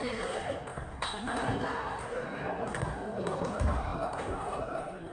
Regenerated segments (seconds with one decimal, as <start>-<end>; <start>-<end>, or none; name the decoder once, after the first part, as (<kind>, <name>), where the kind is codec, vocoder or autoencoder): 0.0-5.1 (codec, SNAC)